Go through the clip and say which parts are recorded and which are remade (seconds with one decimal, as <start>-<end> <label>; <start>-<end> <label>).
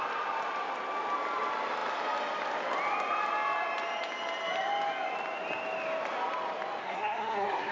0.0-6.8 recorded; 6.8-7.7 remade